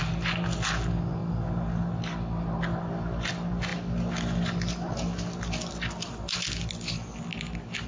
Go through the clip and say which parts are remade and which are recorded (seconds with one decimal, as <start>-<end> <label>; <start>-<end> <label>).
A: 0.0-7.9 recorded